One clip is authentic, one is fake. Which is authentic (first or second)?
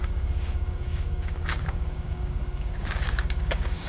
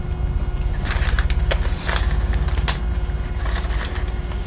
second